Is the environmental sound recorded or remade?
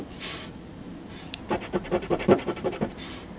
remade